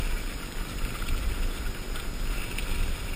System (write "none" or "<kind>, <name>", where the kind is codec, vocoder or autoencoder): none